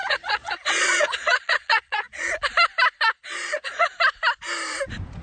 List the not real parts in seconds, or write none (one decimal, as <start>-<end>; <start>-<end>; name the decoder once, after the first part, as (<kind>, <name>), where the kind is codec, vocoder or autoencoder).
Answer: 0.0-2.3 (vocoder, Vocos); 3.2-3.9